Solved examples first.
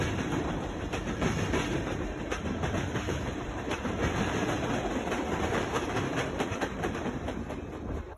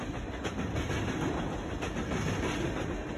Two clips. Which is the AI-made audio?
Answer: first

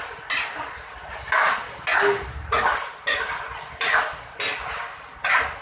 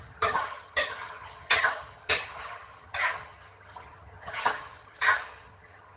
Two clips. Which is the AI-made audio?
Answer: second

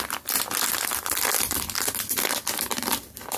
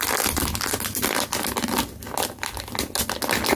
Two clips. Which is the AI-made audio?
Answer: first